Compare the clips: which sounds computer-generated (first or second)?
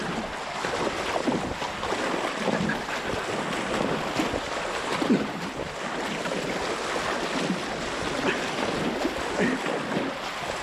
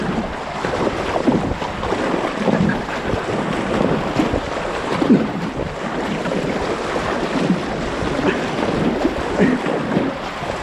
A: second